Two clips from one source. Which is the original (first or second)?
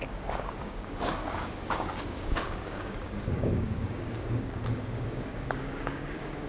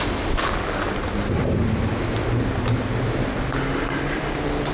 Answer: second